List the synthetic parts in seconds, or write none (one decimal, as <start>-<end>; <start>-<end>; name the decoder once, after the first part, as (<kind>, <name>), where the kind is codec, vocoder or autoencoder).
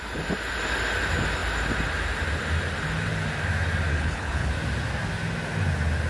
3.9-4.5 (codec, HILCodec)